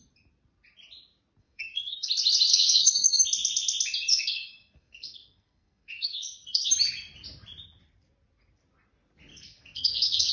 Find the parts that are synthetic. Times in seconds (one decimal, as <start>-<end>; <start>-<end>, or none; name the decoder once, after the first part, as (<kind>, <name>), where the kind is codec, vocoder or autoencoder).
1.4-2.1 (codec, SNAC); 2.5-3.2; 4.1-6.7; 9.3-10.3